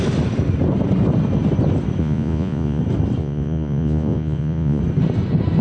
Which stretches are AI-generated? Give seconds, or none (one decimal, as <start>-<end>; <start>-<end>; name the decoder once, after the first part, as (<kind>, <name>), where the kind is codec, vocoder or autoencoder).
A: 2.0-2.8 (vocoder, Vocos); 3.2-4.8